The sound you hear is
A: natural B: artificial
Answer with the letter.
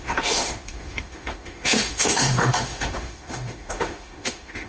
B